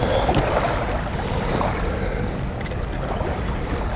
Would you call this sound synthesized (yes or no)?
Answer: no